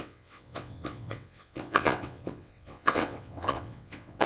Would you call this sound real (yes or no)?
no